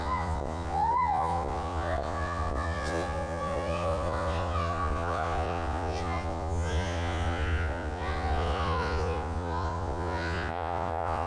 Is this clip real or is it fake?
fake